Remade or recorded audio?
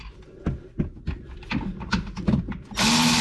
recorded